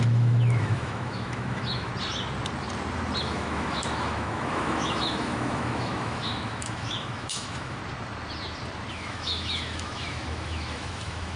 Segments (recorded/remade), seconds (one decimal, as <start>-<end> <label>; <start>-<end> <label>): 0.0-1.9 remade; 1.9-3.2 recorded; 3.2-7.8 remade; 7.8-8.9 recorded; 8.9-11.4 remade